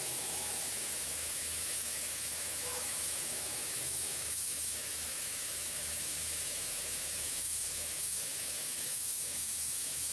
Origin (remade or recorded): remade